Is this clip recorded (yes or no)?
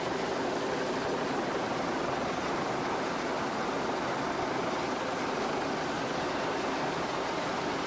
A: yes